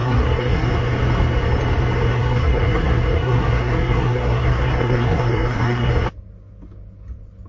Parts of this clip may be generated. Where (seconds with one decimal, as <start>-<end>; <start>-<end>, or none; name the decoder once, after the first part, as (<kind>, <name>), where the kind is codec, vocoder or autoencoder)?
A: 0.0-0.7 (codec, SNAC); 2.1-5.9